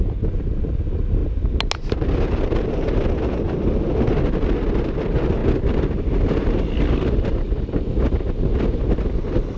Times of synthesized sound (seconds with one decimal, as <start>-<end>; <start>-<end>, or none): 0.0-1.2; 5.0-9.6